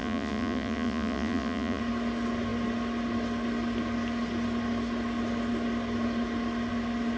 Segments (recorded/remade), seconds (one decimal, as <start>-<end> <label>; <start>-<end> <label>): 0.0-1.8 remade; 1.8-7.2 recorded